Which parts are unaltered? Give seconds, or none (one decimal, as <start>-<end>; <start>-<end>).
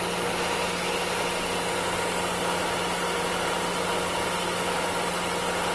0.0-5.7